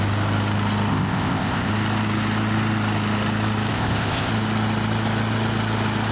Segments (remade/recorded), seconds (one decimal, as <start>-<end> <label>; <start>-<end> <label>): 0.0-0.9 recorded; 0.9-1.7 remade; 1.7-3.7 recorded; 3.7-4.3 remade; 4.3-6.1 recorded